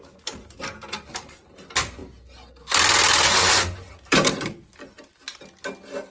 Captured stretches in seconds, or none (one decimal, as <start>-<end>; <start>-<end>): 0.0-6.1